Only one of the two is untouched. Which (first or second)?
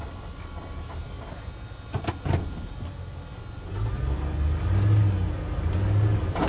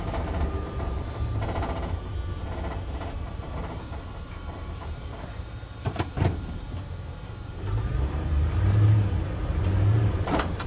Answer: first